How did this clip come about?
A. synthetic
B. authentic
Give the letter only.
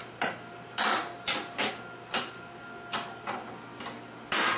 B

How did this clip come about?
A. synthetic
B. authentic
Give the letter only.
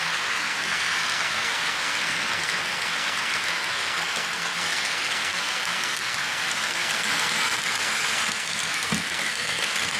A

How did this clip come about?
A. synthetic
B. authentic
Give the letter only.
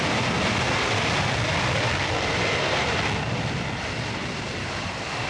B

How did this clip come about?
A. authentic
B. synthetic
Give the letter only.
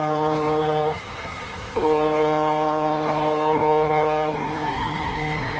B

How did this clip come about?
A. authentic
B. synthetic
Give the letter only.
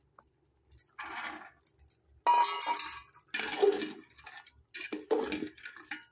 A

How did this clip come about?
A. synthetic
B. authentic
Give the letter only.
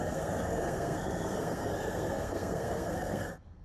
A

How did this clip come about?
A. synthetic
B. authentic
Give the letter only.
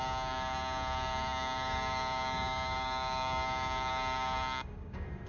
A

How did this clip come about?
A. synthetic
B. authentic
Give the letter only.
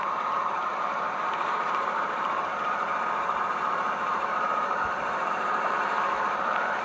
A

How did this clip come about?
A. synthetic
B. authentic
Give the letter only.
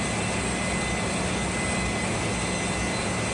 B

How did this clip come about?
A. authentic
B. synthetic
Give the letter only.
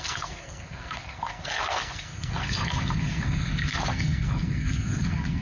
B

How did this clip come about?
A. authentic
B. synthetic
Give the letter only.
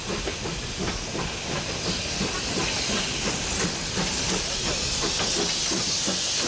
A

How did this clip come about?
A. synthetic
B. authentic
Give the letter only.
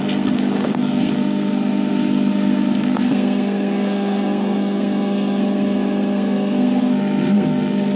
A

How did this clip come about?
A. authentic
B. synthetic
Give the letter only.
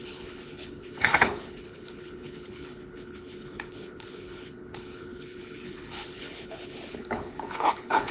B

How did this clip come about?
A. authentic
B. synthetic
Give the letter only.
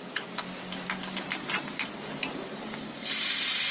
A